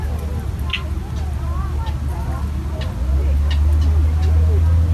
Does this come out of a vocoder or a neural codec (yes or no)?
no